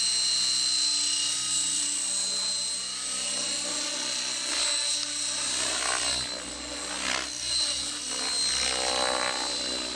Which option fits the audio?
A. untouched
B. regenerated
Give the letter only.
A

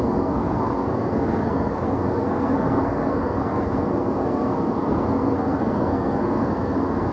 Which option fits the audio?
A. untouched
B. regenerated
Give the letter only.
B